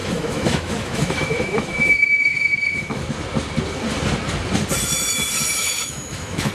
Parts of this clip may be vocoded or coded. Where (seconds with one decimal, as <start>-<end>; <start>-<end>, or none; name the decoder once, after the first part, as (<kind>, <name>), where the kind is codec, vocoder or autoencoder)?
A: 0.0-3.0 (autoencoder, DAC-VAE); 5.6-6.5